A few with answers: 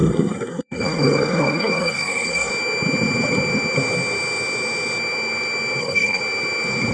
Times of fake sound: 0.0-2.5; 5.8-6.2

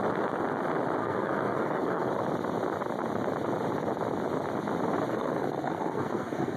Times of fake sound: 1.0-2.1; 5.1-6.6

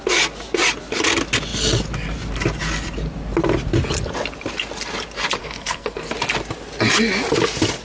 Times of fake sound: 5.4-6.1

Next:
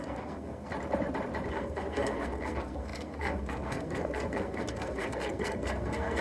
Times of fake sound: 0.0-0.7; 1.5-6.2

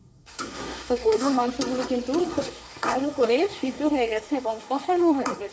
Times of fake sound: 0.0-1.5; 2.2-5.5

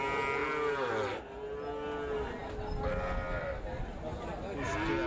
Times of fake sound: none